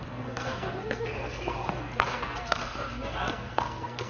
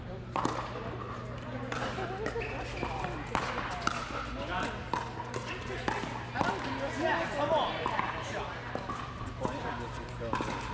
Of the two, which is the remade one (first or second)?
first